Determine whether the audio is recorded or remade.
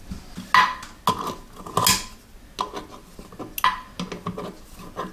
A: recorded